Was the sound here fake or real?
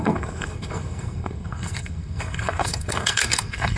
fake